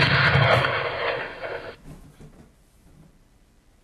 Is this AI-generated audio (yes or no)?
no